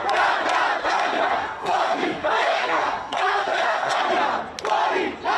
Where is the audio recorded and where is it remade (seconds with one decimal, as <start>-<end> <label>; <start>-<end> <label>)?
0.0-0.8 recorded; 0.8-4.0 remade; 4.0-5.4 recorded